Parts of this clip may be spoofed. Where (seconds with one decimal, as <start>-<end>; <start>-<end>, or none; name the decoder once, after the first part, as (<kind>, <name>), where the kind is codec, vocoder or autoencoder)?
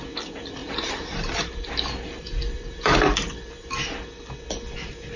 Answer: 0.6-3.7 (vocoder, BigVGAN v2)